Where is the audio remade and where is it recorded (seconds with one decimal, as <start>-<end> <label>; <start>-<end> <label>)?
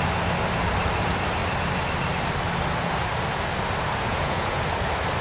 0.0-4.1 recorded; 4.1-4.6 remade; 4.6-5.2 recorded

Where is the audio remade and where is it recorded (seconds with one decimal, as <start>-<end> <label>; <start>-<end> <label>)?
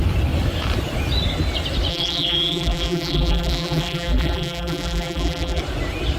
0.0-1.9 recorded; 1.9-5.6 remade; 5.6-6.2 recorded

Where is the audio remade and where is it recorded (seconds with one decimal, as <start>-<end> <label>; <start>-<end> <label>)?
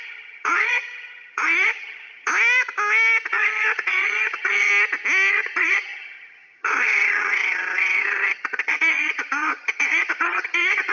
0.0-2.3 remade; 2.3-3.3 recorded; 3.3-4.7 remade; 4.7-5.3 recorded; 5.3-10.9 remade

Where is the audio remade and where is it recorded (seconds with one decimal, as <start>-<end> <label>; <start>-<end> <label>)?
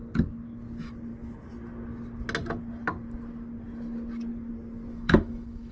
0.0-4.9 recorded; 4.9-5.7 remade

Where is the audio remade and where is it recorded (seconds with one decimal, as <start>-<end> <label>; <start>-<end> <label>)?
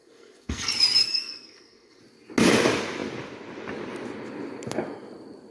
0.0-0.7 remade; 0.7-1.1 recorded; 1.1-2.0 remade; 2.0-5.5 recorded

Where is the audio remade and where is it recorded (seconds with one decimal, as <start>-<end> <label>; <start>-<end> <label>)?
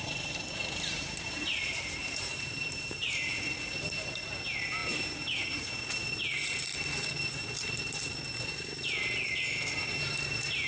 0.0-0.6 recorded; 0.6-3.1 remade; 3.1-4.8 recorded; 4.8-5.4 remade; 5.4-10.7 recorded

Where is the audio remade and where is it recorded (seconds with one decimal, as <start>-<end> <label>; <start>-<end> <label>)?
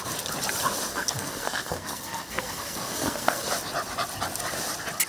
0.0-0.9 recorded; 0.9-3.5 remade; 3.5-5.1 recorded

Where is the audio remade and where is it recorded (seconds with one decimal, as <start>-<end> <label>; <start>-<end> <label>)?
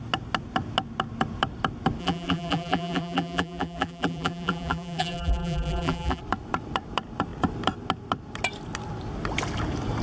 0.0-2.0 recorded; 2.0-6.2 remade; 6.2-10.0 recorded